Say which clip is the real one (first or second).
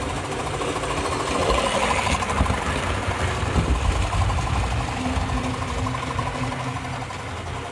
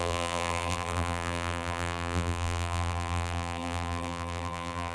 first